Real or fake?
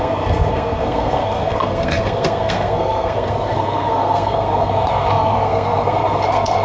fake